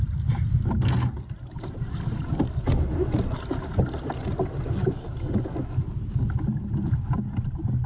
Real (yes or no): yes